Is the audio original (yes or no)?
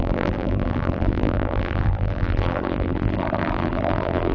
no